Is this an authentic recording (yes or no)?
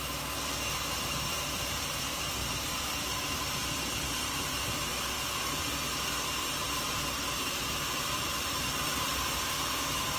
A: no